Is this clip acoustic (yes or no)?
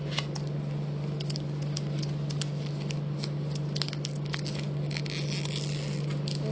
yes